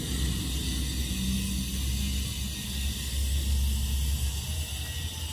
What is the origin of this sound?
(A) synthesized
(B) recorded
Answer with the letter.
B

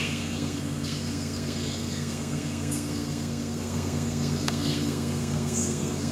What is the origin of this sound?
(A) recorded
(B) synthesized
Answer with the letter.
B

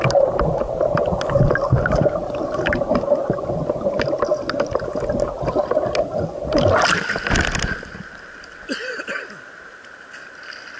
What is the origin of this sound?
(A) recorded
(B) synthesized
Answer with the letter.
A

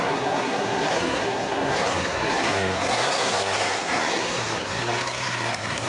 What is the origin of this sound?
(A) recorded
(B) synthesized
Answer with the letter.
B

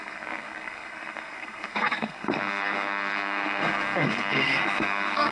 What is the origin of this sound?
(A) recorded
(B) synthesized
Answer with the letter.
B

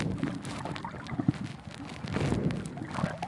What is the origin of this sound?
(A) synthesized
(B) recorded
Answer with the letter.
B